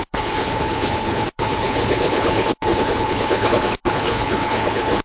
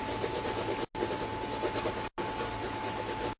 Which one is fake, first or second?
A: first